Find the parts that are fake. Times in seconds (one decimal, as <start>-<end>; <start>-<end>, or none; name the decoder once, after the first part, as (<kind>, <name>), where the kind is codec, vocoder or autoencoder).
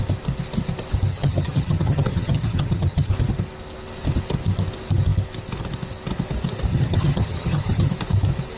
1.1-3.1 (vocoder, HiFi-GAN); 6.7-7.9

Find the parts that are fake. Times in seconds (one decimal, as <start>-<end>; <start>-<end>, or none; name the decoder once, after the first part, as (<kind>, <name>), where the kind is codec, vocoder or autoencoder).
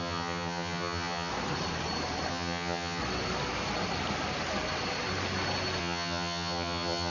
0.0-1.3 (vocoder, HiFi-GAN); 2.3-3.0; 5.8-7.1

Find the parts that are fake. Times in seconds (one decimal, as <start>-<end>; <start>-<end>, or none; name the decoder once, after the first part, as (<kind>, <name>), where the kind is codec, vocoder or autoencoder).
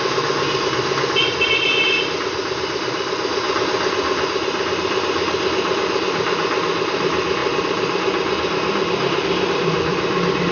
none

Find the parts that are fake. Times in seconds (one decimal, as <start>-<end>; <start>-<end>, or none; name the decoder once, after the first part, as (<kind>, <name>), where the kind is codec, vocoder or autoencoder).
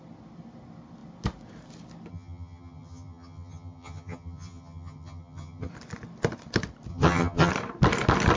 2.1-5.7 (vocoder, HiFi-GAN); 6.9-7.5